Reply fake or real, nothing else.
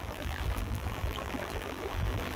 fake